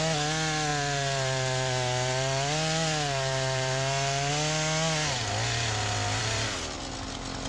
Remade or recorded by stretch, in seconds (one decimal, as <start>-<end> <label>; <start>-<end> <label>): 0.0-0.7 recorded; 0.7-4.3 remade; 4.3-6.2 recorded; 6.2-6.8 remade; 6.8-7.5 recorded